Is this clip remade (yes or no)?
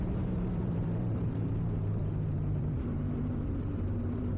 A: yes